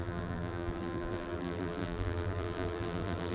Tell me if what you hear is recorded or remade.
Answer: remade